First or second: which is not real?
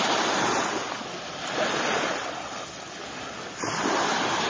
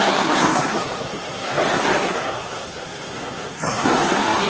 second